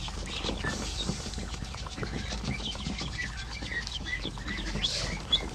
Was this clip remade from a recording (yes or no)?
yes